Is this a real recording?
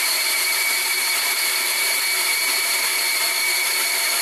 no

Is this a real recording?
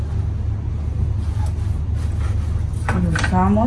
yes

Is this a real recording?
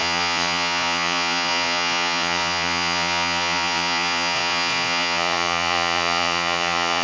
no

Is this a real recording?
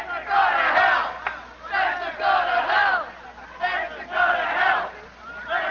yes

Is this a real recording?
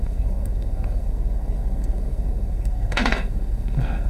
no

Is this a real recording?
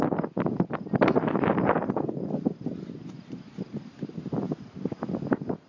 yes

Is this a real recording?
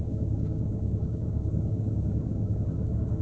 no